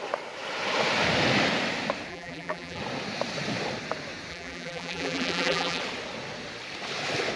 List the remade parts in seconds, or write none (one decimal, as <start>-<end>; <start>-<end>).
2.1-2.8; 4.3-5.8